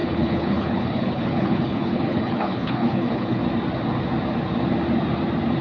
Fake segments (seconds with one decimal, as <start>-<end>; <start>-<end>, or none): 0.0-3.4